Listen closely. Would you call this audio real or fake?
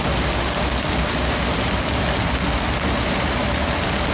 real